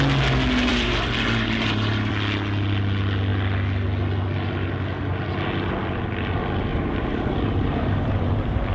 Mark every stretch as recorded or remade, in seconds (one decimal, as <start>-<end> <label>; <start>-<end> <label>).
0.0-0.7 recorded; 0.7-2.1 remade; 2.1-6.7 recorded; 6.7-8.7 remade